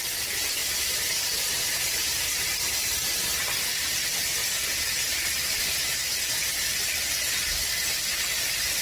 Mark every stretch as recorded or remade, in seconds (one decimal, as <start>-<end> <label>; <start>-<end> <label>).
0.0-3.2 remade; 3.2-3.7 recorded; 3.7-4.4 remade; 4.4-8.8 recorded